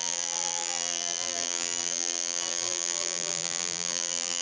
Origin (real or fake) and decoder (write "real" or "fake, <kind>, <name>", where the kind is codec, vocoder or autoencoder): fake, vocoder, BigVGAN v2